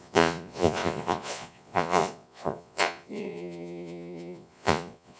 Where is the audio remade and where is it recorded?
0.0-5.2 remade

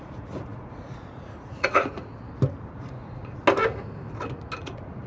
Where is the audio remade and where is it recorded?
0.0-2.1 remade; 2.1-2.8 recorded; 2.8-3.4 remade; 3.4-4.6 recorded; 4.6-5.1 remade

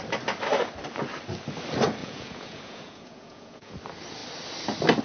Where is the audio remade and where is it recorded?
0.0-2.0 recorded; 2.0-3.7 remade; 3.7-5.0 recorded

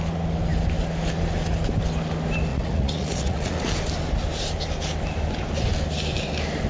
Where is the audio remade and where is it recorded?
0.0-2.5 recorded; 2.5-3.7 remade; 3.7-6.7 recorded

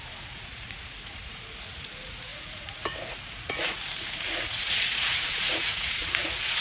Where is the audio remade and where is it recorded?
0.0-6.6 remade

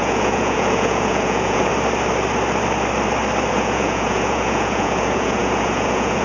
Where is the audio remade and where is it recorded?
0.0-1.7 remade; 1.7-3.5 recorded; 3.5-6.2 remade